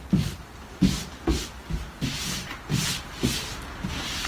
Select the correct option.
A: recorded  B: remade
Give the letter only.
A